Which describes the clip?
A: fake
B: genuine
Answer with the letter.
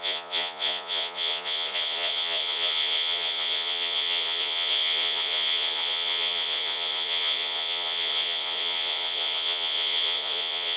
A